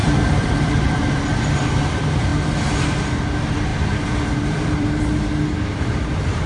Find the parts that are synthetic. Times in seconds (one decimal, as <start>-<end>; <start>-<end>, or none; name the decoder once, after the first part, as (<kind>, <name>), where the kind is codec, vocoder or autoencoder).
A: 0.0-1.2 (vocoder, BigVGAN v2); 3.7-5.0